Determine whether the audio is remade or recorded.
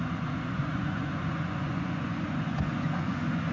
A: remade